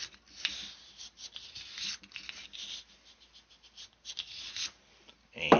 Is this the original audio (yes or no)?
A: yes